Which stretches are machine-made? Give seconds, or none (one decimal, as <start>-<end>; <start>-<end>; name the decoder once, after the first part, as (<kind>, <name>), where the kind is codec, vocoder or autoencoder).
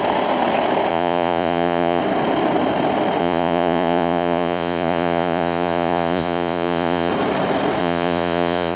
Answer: 0.9-2.0 (vocoder, Vocos); 3.2-7.1; 7.8-8.8